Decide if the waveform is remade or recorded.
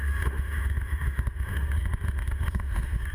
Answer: remade